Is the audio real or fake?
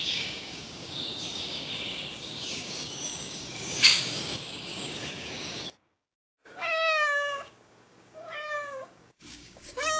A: fake